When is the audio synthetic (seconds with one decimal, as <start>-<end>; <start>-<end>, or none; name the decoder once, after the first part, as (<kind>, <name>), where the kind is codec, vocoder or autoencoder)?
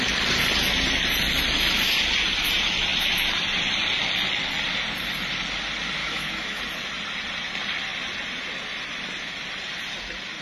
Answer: 6.0-6.6 (autoencoder, DAC-VAE)